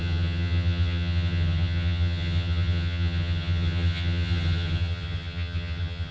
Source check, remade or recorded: remade